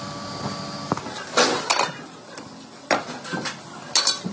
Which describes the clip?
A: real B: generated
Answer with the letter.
A